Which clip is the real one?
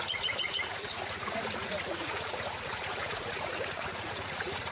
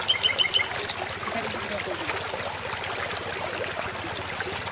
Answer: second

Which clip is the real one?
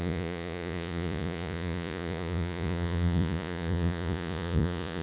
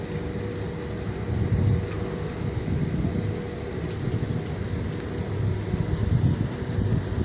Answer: second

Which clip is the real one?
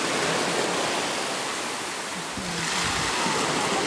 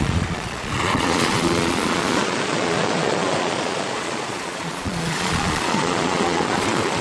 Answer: first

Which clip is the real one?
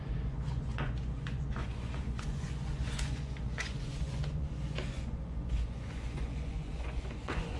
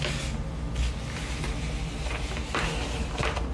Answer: second